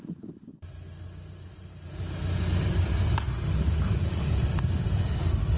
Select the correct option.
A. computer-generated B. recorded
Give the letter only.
B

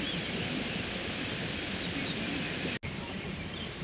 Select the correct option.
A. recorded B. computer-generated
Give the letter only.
A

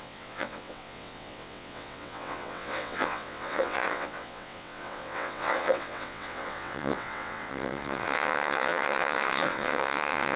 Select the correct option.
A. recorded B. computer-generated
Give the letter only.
B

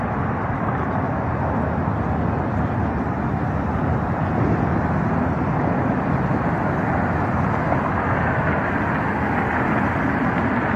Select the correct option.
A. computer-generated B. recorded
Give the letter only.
B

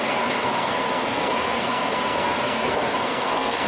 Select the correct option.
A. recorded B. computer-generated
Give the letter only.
B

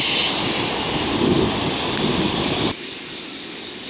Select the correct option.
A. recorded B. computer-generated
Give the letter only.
A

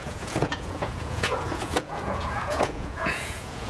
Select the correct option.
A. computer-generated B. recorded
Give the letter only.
A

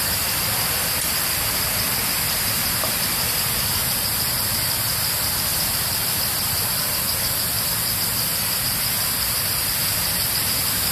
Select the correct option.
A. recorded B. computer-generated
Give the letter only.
B